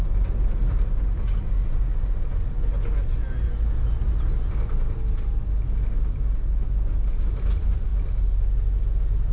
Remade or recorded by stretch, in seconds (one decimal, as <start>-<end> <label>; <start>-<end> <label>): 0.0-9.3 recorded